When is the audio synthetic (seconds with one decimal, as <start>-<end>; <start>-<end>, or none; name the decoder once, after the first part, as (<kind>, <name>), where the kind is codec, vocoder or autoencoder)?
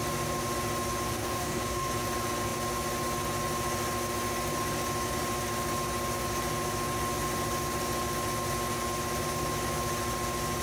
1.1-1.9 (codec, DAC)